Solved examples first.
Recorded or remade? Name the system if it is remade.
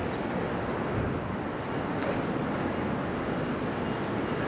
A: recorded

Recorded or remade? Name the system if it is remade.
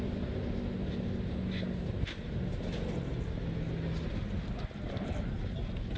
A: recorded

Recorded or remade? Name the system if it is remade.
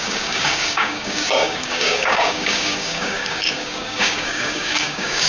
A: remade, codec, DAC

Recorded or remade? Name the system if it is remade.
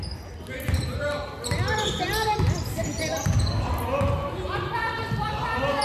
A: recorded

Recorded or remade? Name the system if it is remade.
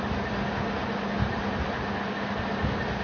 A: recorded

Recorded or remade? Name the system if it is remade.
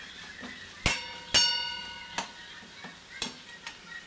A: recorded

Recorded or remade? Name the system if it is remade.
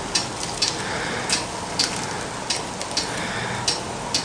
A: recorded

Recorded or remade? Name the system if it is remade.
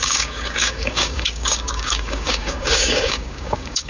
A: remade, codec, DAC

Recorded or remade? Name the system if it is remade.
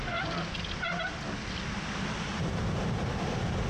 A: recorded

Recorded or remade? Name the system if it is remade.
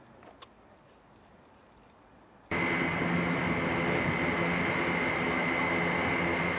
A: recorded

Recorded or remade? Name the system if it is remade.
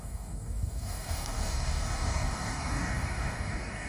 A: remade, codec, DAC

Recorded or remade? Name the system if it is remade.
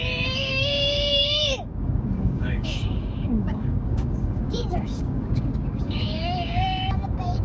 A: remade, codec, DAC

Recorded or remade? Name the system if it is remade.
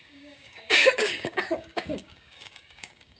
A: remade, codec, DAC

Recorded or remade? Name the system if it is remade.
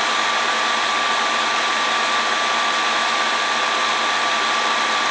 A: recorded